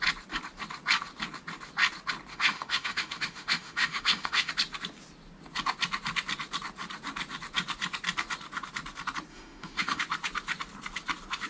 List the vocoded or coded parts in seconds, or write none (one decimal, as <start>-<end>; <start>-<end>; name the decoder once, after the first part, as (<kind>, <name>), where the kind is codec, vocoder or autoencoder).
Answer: 2.3-4.5 (autoencoder, DAC-VAE); 9.3-10.0